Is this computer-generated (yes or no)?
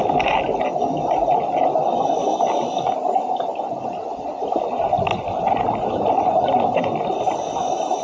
no